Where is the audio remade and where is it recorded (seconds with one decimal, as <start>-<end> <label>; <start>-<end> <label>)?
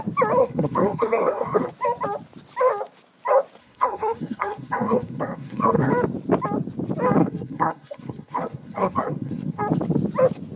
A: 0.0-0.4 recorded; 0.4-1.7 remade; 1.7-3.6 recorded; 3.6-5.9 remade; 5.9-7.2 recorded; 7.2-9.6 remade; 9.6-10.6 recorded